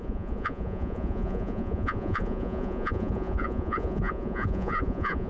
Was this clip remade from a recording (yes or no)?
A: yes